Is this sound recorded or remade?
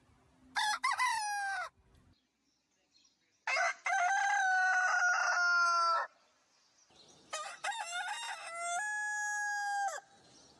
recorded